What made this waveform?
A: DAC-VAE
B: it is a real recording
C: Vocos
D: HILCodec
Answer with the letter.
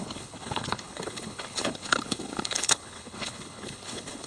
D